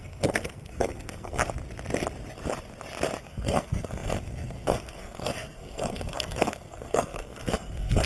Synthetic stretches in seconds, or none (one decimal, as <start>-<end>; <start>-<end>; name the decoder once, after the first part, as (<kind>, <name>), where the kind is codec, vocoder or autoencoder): 0.0-1.4 (codec, SNAC); 3.2-8.1